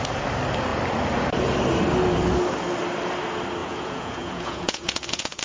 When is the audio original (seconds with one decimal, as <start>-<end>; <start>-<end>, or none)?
0.0-3.6